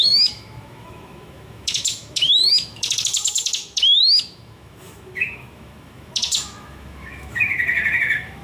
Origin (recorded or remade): remade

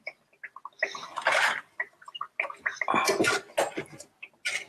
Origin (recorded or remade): recorded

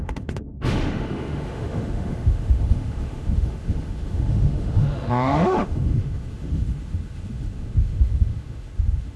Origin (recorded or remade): remade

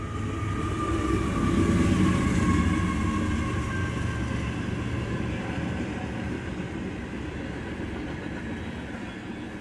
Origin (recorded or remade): recorded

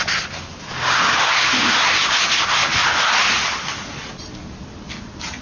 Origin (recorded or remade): recorded